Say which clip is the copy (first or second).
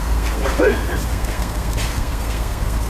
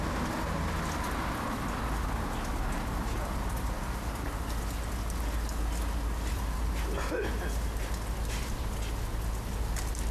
first